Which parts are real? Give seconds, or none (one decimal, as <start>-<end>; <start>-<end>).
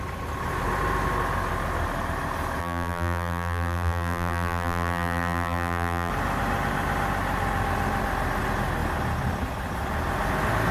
0.0-2.6; 6.1-10.7